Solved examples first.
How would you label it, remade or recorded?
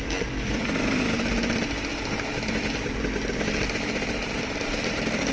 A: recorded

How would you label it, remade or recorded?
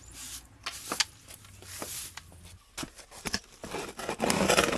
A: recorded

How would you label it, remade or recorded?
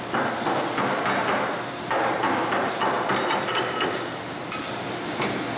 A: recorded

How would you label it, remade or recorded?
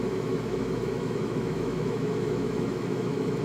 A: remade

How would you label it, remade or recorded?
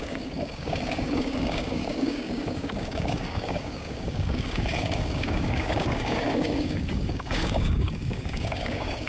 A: remade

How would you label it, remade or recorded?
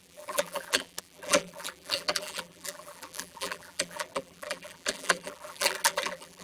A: remade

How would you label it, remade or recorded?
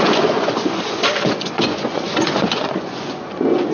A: remade